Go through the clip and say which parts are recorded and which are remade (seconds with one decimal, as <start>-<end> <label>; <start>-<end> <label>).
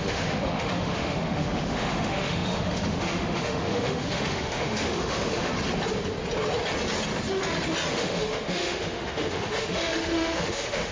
0.0-5.5 remade; 5.5-7.9 recorded; 7.9-10.9 remade